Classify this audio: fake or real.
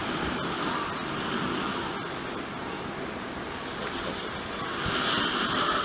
real